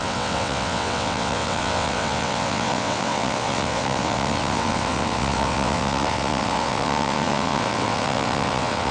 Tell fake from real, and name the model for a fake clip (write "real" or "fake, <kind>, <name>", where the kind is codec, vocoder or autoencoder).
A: fake, vocoder, WaveNeXt